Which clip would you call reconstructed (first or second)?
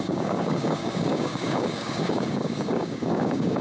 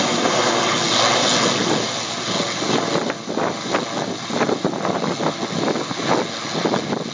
first